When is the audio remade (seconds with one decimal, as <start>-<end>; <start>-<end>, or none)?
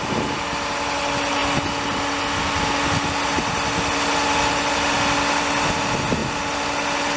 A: none